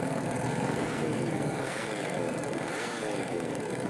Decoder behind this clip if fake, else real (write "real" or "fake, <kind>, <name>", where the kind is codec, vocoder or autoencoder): fake, codec, SNAC